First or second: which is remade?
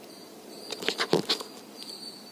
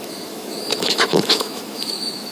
second